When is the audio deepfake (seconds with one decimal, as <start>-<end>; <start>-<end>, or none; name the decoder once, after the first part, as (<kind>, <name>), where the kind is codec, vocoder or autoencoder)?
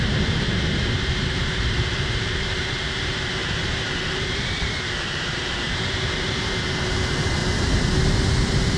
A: 0.0-7.4 (vocoder, BigVGAN v2)